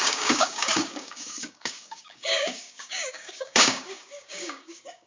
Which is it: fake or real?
fake